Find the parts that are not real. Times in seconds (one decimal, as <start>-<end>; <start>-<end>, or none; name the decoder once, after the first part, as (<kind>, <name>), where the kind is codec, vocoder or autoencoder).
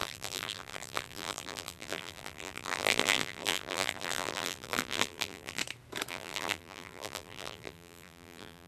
0.0-5.6 (vocoder, BigVGAN v2); 6.1-8.7